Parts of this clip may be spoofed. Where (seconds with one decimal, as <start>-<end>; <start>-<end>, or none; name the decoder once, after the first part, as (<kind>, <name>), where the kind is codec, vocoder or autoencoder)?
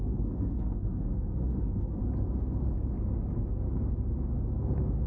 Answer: 0.0-2.0 (codec, SNAC)